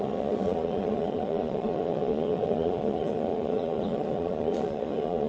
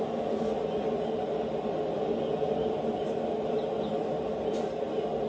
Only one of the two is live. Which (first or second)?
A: second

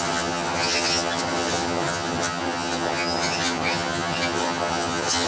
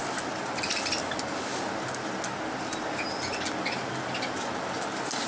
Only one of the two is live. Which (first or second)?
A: second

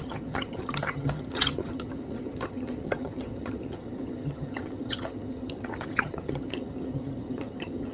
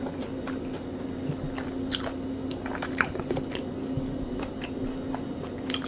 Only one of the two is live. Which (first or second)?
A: second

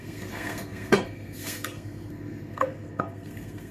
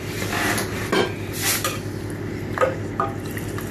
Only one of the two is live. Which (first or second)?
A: second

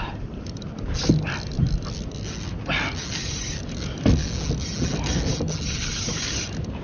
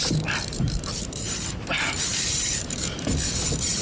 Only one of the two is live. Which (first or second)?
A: first